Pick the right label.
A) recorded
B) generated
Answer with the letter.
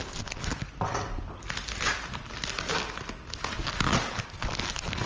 A